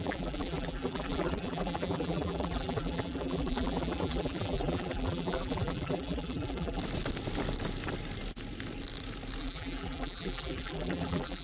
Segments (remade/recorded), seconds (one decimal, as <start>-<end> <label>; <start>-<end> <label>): 0.0-6.8 remade; 6.8-9.4 recorded; 9.4-11.4 remade

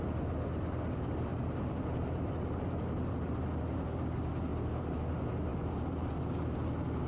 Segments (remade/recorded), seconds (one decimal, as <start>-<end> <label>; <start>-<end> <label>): 0.0-1.3 recorded; 1.3-3.1 remade; 3.1-4.5 recorded; 4.5-5.0 remade; 5.0-5.5 recorded; 5.5-6.1 remade; 6.1-7.1 recorded

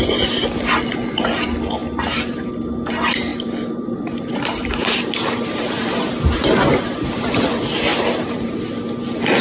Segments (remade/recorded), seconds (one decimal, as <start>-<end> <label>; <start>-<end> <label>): 0.0-3.3 recorded; 3.3-7.3 remade; 7.3-7.9 recorded; 7.9-8.6 remade; 8.6-9.4 recorded

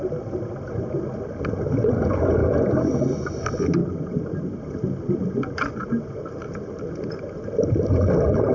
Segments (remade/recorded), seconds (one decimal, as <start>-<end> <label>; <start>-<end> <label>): 0.0-3.8 recorded; 3.8-4.6 remade; 4.6-8.5 recorded

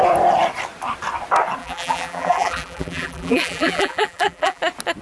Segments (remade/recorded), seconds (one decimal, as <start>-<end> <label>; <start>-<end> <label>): 0.0-1.6 recorded; 1.6-4.6 remade; 4.6-5.0 recorded

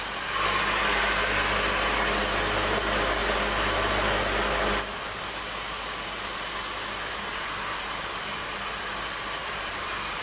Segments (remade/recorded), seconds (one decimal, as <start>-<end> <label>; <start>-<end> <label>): 0.0-9.4 recorded; 9.4-10.2 remade

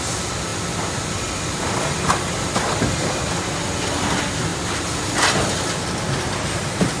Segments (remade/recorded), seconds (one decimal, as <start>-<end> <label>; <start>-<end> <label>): 0.0-0.5 recorded; 0.5-1.6 remade; 1.6-4.5 recorded; 4.5-5.1 remade; 5.1-7.0 recorded

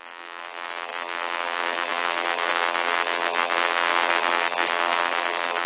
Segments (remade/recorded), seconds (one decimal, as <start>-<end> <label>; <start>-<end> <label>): 0.0-5.7 remade